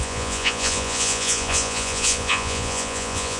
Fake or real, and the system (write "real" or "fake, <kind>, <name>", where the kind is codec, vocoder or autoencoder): fake, vocoder, Vocos